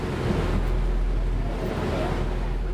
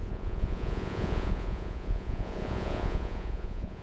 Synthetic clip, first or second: second